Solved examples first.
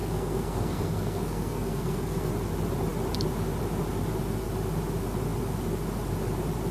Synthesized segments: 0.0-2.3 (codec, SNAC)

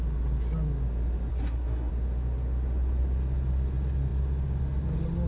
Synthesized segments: 1.3-1.9 (codec, SNAC)

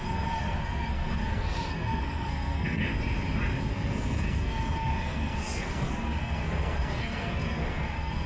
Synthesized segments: 0.0-2.8 (codec, SNAC); 3.7-8.3

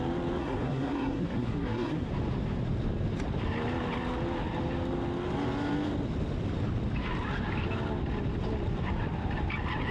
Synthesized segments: 0.4-2.1 (codec, SNAC)

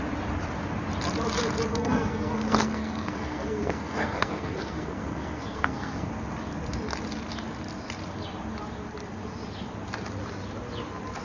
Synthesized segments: 1.7-6.1 (codec, SNAC)

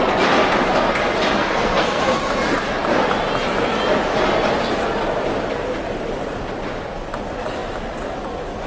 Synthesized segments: 1.4-2.0 (codec, SNAC)